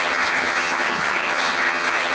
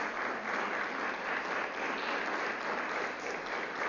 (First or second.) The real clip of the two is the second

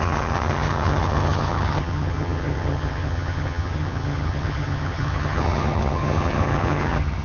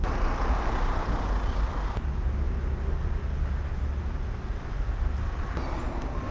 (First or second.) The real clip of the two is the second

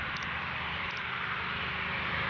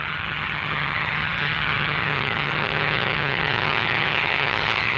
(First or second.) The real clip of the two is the first